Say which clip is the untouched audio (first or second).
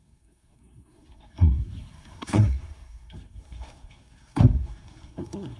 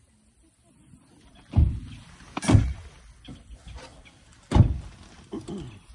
second